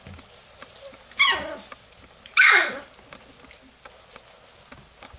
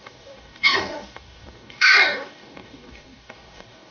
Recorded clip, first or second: first